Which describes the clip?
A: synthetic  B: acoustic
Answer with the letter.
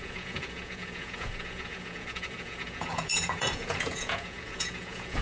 A